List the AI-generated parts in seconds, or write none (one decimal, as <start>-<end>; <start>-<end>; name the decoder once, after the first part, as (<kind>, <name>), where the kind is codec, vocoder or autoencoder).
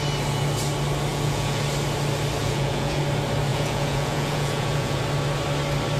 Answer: 1.1-1.6 (vocoder, Vocos); 2.4-3.0; 3.5-5.0